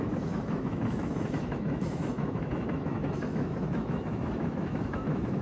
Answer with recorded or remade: remade